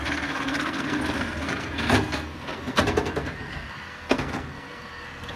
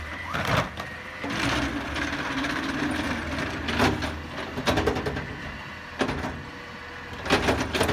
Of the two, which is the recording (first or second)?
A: second